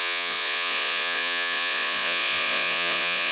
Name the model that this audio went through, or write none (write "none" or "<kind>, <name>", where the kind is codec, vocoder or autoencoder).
vocoder, Vocos